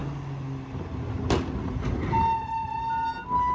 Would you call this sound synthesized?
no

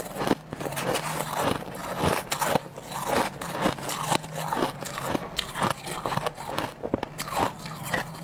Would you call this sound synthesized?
no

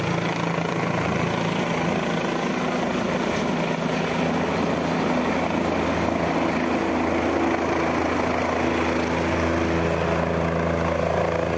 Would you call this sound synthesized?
no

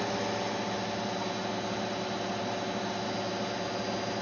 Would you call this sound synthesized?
no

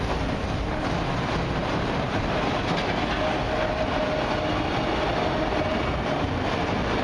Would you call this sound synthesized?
no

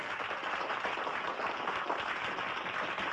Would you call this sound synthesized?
no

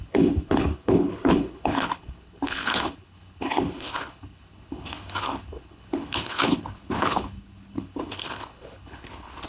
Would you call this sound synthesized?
yes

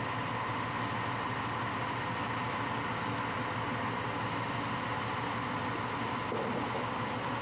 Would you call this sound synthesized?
no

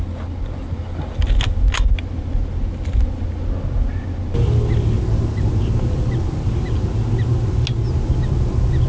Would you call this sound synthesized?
no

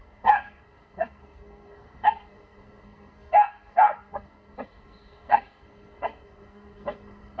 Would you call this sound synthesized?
yes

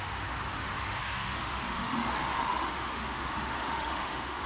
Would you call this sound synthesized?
yes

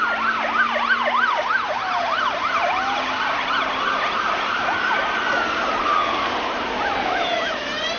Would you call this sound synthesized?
no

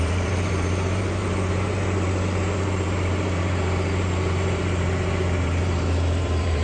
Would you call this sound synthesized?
yes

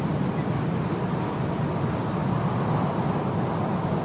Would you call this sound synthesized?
no